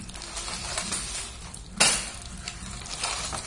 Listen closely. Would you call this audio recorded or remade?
recorded